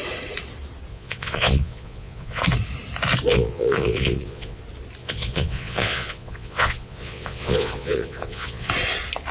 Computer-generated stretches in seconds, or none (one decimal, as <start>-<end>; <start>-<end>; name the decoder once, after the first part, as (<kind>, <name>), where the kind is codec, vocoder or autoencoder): 0.9-2.4 (vocoder, Vocos); 3.3-4.6; 5.0-8.7